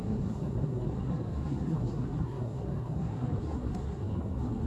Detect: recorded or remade remade